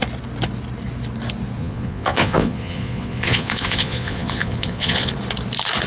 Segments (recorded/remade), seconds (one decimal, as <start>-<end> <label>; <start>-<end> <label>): 0.0-1.6 recorded; 1.6-5.1 remade; 5.1-5.9 recorded